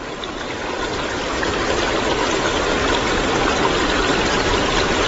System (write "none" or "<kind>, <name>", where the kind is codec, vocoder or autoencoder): none